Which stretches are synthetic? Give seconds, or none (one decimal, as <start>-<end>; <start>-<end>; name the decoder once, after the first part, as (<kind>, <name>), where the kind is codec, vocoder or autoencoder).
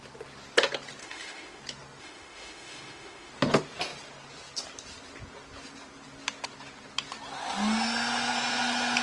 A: 1.0-1.6 (autoencoder, DAC-VAE); 2.0-3.3